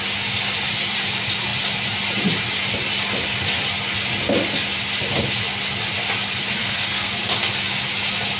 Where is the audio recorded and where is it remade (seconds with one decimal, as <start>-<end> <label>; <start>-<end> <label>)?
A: 0.0-6.6 recorded; 6.6-7.1 remade; 7.1-8.4 recorded